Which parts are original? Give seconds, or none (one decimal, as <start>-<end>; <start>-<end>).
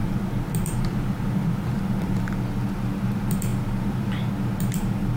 2.3-3.5